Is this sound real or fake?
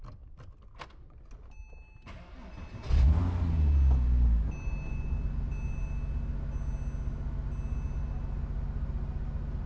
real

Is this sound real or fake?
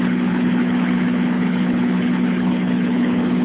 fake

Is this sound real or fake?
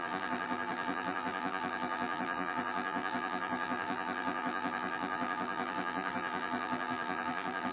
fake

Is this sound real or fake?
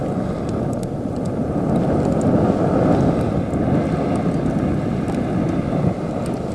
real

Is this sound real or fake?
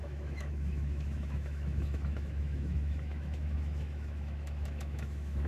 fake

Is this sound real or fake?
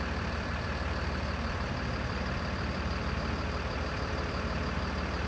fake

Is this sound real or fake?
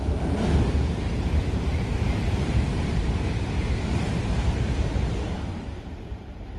fake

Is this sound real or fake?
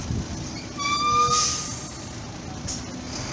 real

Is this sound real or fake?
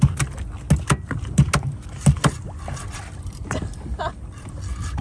real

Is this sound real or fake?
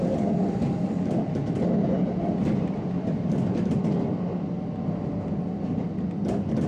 real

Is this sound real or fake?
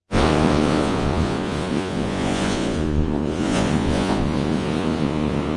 fake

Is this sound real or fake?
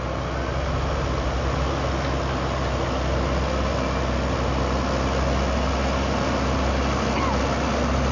real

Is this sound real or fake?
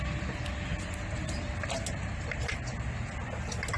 real